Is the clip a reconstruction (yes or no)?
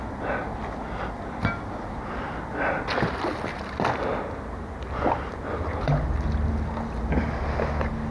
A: no